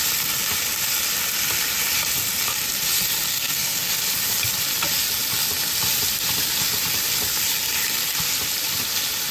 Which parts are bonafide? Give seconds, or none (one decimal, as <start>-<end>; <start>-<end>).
0.0-3.3; 3.9-9.3